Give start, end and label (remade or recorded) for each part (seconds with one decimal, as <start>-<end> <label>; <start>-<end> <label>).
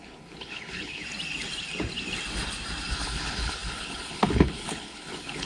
0.0-1.0 remade; 1.0-2.9 recorded; 2.9-5.5 remade